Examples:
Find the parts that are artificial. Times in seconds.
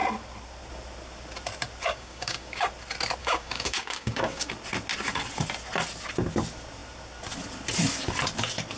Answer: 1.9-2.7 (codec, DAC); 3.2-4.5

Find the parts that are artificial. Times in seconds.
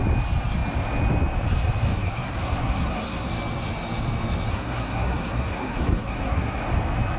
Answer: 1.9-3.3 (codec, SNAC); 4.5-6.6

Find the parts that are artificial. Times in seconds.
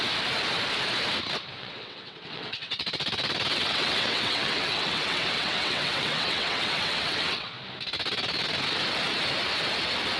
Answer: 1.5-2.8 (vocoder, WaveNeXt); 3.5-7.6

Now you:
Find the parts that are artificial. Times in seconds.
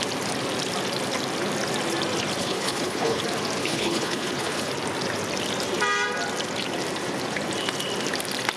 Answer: 2.4-3.2 (codec, HILCodec); 3.6-4.7